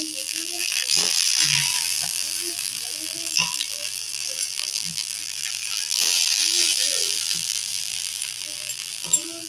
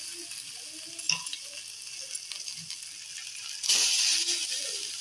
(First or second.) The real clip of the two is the second